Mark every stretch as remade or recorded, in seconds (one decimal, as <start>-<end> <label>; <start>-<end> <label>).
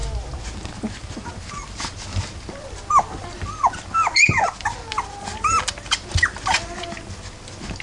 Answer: 0.0-7.8 recorded